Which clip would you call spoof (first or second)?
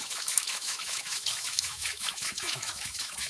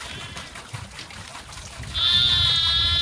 first